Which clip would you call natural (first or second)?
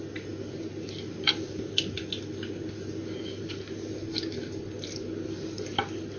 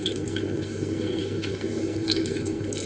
first